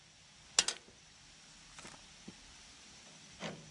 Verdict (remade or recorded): recorded